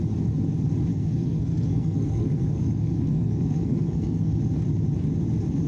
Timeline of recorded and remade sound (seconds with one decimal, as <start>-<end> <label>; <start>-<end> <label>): 0.0-0.9 recorded; 0.9-4.3 remade; 4.3-5.7 recorded